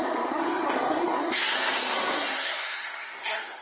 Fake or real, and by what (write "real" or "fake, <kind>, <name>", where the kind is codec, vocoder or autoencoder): fake, codec, SNAC